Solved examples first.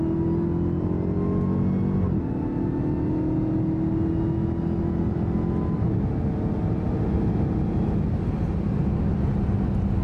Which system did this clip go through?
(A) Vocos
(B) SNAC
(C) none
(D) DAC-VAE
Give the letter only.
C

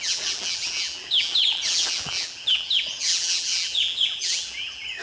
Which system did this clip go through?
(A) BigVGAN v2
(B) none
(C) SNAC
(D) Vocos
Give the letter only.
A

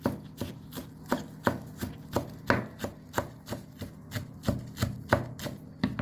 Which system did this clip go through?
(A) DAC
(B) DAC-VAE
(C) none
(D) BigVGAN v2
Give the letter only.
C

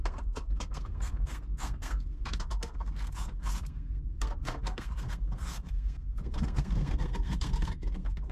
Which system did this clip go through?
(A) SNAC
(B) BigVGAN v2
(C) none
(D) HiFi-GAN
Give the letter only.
A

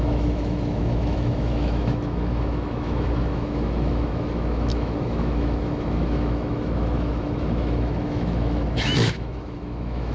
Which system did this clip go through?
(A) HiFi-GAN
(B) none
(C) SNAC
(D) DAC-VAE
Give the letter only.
D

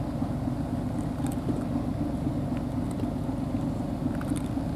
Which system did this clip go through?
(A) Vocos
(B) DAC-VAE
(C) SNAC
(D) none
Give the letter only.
D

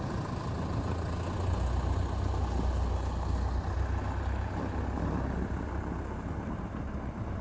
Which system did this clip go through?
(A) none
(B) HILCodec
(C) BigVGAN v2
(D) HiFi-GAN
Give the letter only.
A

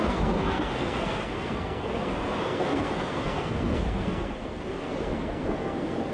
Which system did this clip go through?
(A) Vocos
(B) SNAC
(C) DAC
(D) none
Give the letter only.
B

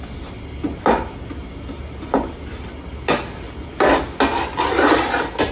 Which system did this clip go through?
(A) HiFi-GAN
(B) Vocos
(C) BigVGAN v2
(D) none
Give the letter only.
D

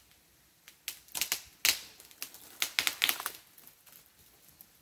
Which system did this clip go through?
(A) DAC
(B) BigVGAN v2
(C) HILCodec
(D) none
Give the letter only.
D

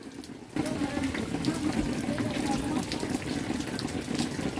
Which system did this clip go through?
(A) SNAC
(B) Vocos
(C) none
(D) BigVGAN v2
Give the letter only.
C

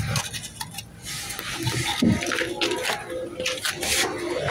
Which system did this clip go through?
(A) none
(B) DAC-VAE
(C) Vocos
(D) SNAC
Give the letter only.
A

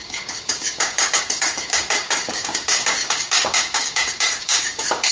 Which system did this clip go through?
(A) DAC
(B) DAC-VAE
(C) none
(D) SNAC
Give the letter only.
A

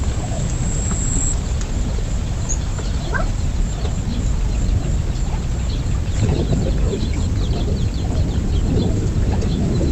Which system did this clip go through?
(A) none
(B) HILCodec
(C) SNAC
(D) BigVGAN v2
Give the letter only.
D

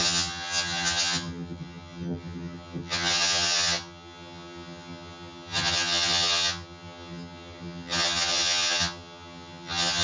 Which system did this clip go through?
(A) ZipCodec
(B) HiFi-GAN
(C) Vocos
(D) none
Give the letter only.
B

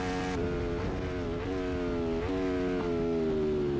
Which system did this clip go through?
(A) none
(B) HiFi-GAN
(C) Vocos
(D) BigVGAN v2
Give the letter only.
A